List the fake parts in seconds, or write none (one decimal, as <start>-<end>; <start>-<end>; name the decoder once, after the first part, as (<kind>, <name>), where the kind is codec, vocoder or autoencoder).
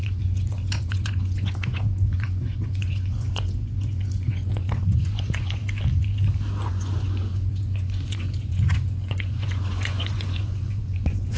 0.0-5.6 (vocoder, Vocos); 6.7-11.4